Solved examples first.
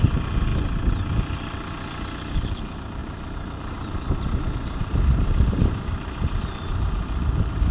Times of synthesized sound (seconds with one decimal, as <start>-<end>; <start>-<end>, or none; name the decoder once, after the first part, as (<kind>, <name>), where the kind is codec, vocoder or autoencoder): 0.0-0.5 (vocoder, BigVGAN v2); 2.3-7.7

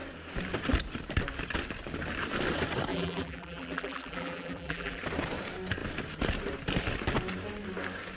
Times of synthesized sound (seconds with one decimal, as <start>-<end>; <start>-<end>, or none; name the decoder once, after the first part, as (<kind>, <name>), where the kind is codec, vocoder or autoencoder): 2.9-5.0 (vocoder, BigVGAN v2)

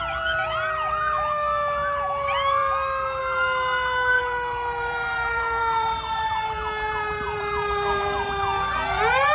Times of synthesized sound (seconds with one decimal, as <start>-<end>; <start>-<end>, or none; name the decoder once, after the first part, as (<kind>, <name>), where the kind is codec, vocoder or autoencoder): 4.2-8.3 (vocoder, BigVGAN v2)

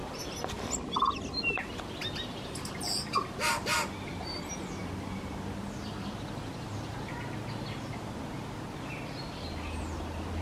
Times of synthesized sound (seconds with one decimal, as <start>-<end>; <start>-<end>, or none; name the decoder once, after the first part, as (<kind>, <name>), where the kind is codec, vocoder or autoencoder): none

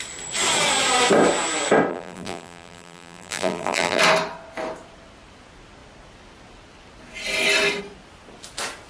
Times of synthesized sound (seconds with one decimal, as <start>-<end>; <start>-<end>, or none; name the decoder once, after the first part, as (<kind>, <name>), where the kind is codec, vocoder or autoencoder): 1.9-4.0 (vocoder, BigVGAN v2)

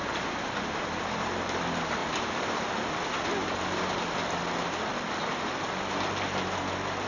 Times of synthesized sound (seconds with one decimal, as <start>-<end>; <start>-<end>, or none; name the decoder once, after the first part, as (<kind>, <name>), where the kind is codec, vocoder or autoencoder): 0.0-0.8 (vocoder, BigVGAN v2); 2.0-2.7; 5.3-5.9

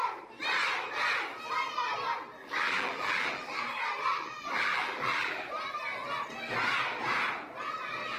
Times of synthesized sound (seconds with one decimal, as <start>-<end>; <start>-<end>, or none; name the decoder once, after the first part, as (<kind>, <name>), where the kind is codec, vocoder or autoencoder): 2.4-3.6 (vocoder, BigVGAN v2); 4.1-5.5